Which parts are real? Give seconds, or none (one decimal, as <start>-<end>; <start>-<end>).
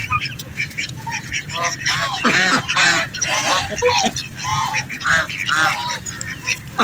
3.4-4.5; 5.3-6.8